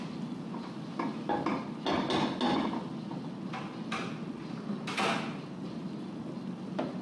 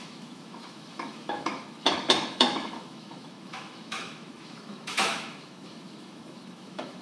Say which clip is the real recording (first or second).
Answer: first